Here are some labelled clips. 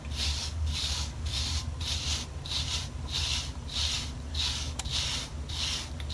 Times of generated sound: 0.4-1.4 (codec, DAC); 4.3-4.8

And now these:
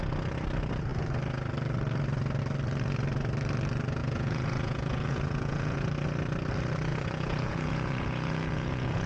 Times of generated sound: 4.0-5.9 (vocoder, Vocos); 6.9-9.1

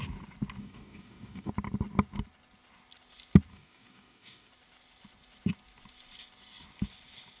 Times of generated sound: 0.6-1.5 (codec, DAC); 3.5-4.5

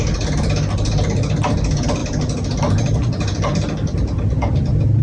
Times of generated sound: none

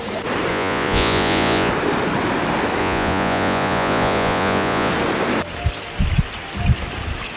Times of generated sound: 0.5-1.7 (vocoder, Vocos); 2.8-4.9